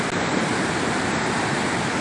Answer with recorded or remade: recorded